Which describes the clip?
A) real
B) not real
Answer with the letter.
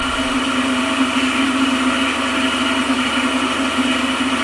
A